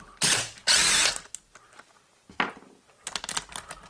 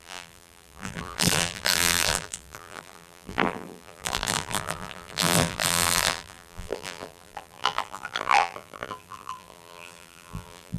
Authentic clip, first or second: first